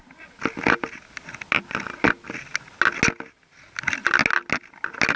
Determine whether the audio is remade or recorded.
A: recorded